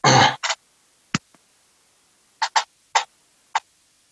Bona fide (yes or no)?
yes